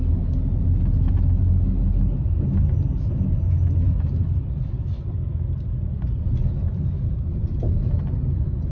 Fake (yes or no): no